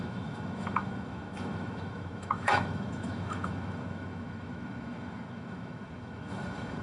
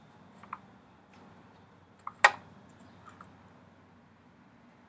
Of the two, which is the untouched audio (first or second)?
second